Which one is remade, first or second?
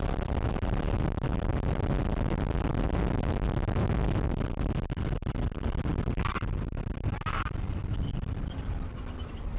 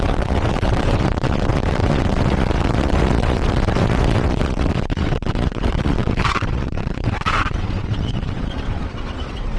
second